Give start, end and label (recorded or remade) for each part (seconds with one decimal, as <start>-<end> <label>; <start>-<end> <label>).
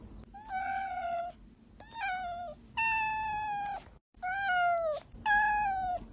0.0-0.6 recorded; 0.6-1.2 remade; 1.2-6.1 recorded